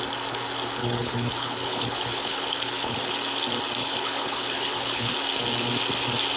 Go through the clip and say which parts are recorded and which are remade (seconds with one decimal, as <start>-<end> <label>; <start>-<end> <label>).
0.0-0.8 recorded; 0.8-3.1 remade; 3.1-3.8 recorded; 3.8-5.1 remade; 5.1-6.4 recorded